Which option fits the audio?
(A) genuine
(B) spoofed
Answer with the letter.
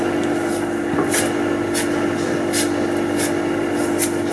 A